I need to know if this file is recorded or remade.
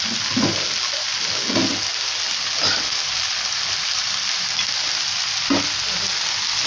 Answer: recorded